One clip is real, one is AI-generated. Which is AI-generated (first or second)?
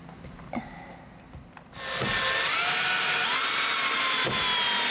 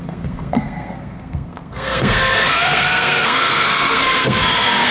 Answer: second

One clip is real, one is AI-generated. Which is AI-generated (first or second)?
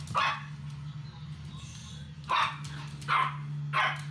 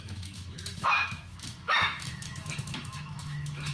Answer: second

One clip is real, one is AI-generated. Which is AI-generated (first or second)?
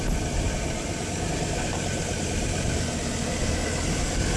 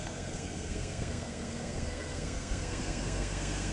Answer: second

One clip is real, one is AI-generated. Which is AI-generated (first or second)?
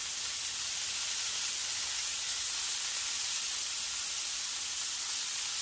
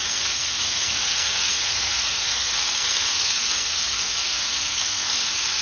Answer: second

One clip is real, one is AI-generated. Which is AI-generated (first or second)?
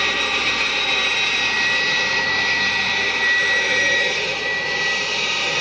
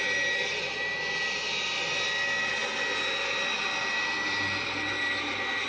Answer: first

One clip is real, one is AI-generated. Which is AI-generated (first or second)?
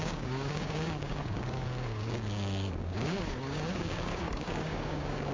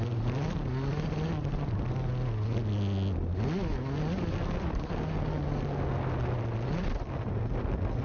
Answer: first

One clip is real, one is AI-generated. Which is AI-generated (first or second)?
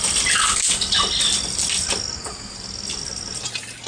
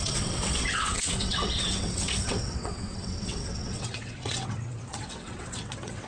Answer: second